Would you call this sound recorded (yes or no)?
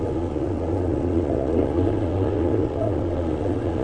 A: no